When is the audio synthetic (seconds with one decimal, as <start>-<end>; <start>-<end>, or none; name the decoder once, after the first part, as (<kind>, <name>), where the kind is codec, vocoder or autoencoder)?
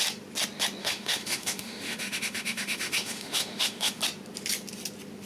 0.8-4.0 (autoencoder, DAC-VAE)